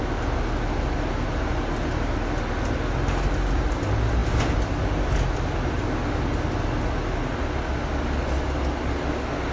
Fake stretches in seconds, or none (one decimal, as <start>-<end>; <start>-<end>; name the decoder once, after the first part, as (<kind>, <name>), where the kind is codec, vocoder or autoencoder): none